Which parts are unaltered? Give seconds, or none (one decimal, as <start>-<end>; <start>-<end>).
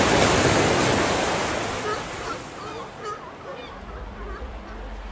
0.0-2.7; 4.6-5.1